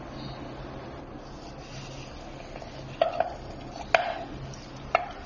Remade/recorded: recorded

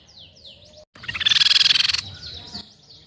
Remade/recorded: recorded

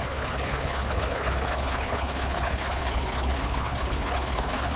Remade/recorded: remade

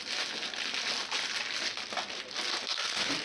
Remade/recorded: recorded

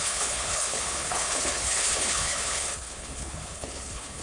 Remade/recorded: remade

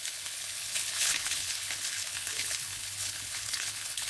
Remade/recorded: remade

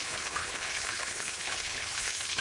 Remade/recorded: remade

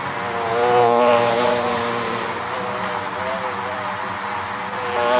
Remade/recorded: recorded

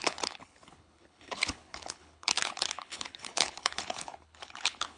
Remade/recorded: remade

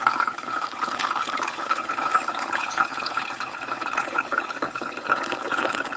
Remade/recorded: remade